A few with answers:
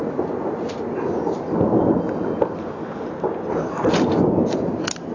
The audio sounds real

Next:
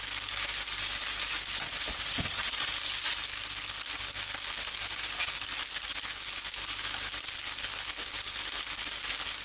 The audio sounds real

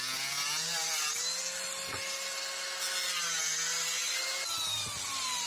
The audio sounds real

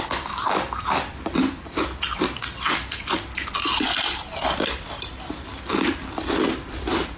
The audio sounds fake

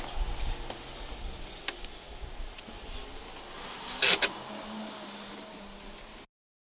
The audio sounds real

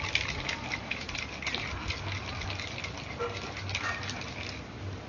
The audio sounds real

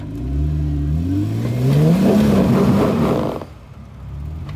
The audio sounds real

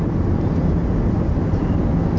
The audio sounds real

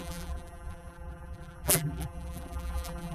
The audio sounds fake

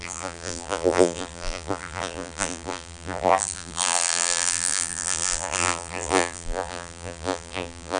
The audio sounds fake